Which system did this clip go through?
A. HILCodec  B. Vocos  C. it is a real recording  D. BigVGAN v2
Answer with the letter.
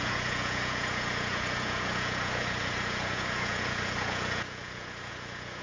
B